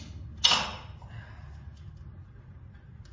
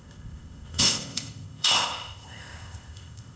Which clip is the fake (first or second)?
second